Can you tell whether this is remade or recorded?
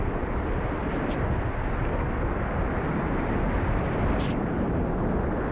recorded